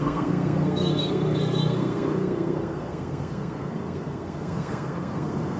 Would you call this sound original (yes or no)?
no